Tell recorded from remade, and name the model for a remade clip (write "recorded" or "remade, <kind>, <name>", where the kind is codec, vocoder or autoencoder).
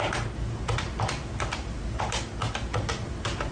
recorded